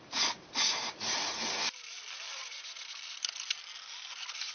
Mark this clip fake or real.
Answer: real